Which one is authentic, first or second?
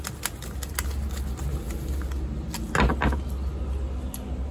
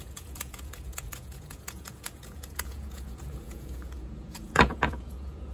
first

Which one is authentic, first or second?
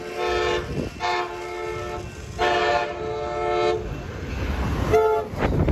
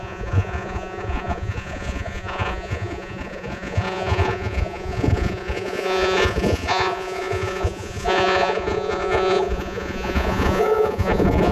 first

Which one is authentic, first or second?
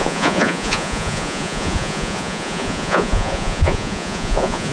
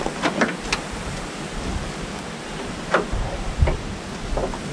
second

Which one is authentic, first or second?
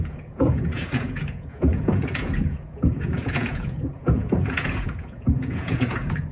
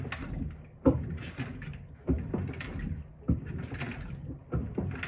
second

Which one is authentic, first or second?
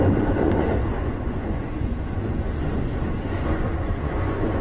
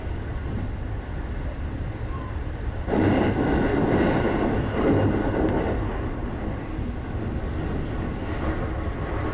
second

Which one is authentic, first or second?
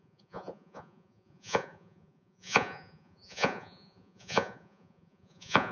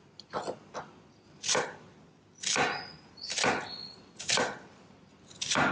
second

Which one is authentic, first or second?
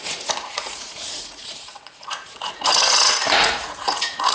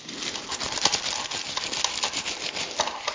second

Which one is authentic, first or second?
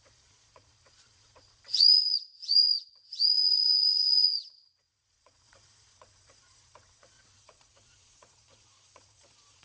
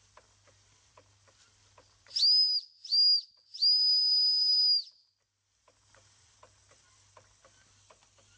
second